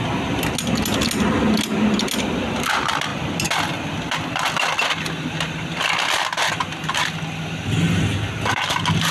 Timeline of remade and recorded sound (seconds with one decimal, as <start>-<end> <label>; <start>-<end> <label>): 0.0-9.1 recorded